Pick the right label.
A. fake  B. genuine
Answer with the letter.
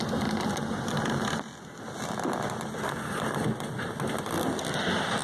B